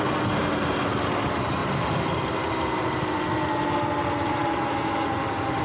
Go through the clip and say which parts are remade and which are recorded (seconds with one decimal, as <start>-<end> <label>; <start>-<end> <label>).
0.0-5.6 recorded